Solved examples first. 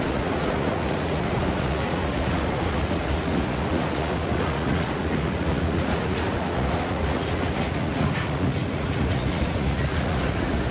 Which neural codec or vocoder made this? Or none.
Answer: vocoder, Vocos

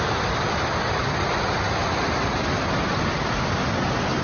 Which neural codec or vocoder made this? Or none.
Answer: none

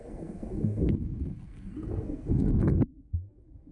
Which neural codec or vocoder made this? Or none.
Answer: codec, SNAC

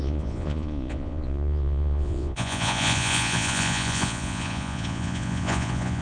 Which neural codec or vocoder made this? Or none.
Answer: vocoder, Vocos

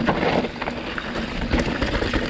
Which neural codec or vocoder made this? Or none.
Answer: none